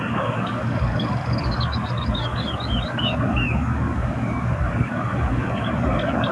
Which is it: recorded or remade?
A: remade